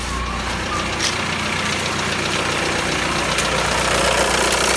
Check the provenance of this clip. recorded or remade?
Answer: recorded